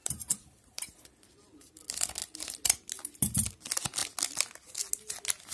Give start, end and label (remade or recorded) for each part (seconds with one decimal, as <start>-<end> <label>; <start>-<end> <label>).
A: 0.0-1.7 remade; 1.7-5.5 recorded